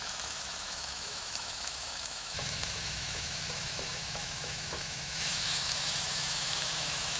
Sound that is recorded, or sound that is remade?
remade